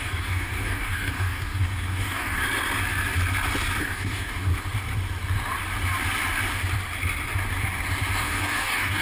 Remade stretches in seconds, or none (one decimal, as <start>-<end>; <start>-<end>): 0.0-2.4; 3.8-4.5; 8.2-9.0